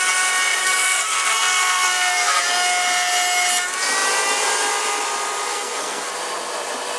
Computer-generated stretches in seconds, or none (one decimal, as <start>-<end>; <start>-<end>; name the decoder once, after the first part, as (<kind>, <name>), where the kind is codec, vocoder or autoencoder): 0.6-2.4 (codec, SNAC); 5.5-6.1